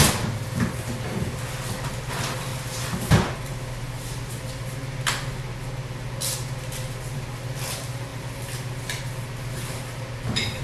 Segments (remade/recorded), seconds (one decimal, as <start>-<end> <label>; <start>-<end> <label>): 0.0-10.6 recorded